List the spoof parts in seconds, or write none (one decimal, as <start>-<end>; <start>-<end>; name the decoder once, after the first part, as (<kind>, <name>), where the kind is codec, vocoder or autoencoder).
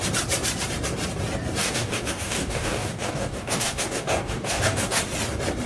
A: 1.6-5.0 (codec, DAC)